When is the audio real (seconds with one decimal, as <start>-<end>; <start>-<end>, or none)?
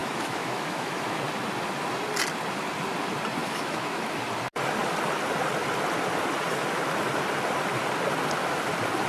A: 1.2-3.4; 4.2-9.1